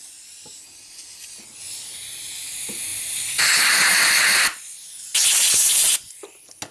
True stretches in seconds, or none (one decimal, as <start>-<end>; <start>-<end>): 0.0-6.7